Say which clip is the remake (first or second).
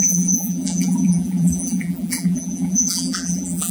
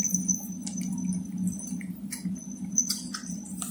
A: first